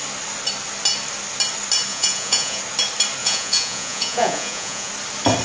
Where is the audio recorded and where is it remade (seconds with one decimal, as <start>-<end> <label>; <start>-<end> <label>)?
0.0-1.9 recorded; 1.9-2.6 remade; 2.6-3.2 recorded; 3.2-4.9 remade; 4.9-5.4 recorded